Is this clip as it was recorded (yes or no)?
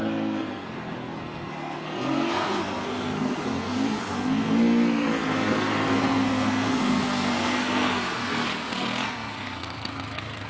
no